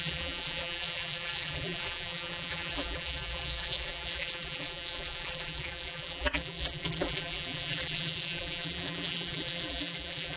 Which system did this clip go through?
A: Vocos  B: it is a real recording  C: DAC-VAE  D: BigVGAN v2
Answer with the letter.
D